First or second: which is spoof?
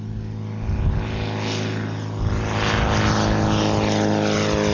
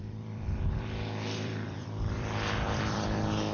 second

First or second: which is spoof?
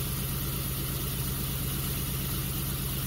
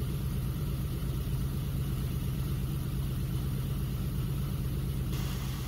second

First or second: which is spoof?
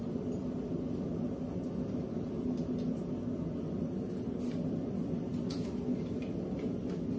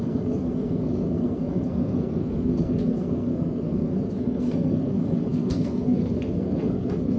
second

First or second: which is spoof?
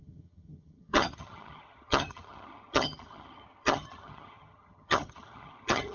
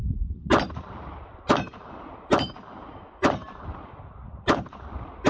first